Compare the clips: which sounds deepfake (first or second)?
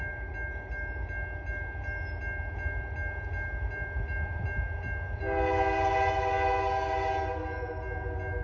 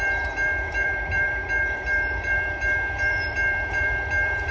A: second